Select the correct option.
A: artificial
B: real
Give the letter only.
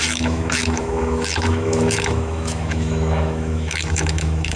A